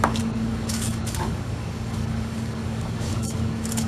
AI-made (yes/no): yes